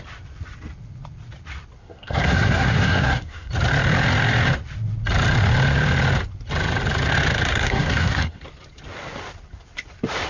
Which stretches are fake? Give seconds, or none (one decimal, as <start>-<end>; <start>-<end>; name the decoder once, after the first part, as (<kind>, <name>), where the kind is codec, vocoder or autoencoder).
1.8-3.5 (codec, SNAC); 7.5-8.4